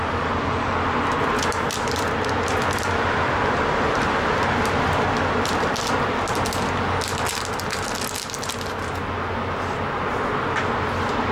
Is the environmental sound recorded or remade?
recorded